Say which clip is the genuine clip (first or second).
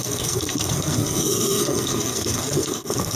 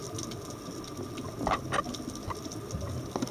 second